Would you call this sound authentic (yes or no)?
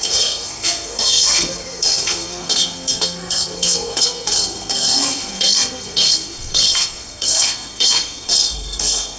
no